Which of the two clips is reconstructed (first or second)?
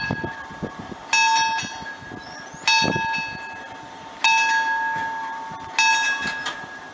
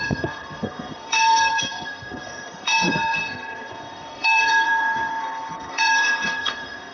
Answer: second